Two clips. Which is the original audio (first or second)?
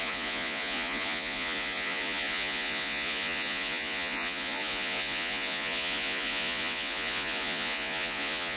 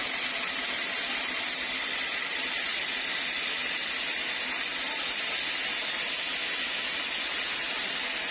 second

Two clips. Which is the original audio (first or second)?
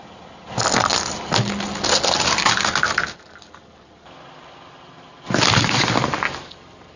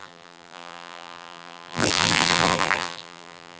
first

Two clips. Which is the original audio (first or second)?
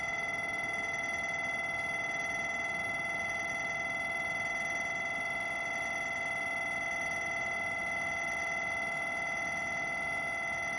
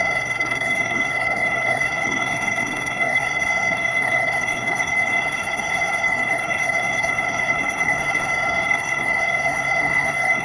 first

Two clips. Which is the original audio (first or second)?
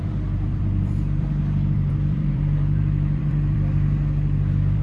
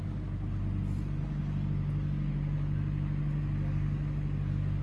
second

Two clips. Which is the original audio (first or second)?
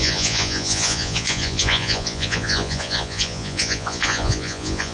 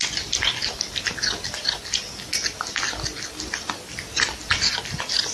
second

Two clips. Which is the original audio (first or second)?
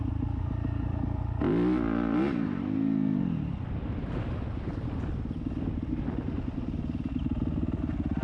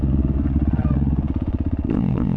first